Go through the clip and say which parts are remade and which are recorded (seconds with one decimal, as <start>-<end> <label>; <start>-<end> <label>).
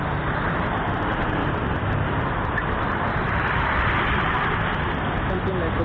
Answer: 0.0-1.4 recorded; 1.4-4.4 remade; 4.4-5.8 recorded